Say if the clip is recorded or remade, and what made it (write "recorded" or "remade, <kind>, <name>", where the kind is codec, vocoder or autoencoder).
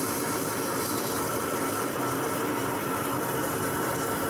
recorded